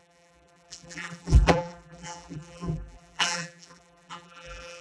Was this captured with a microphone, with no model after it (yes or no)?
no